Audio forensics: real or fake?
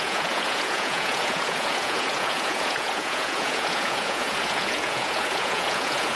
fake